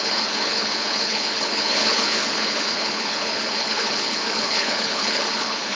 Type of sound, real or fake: fake